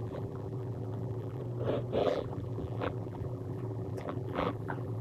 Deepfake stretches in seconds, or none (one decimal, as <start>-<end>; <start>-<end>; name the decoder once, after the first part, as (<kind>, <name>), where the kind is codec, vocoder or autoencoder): 0.0-1.4 (vocoder, BigVGAN v2); 2.0-5.0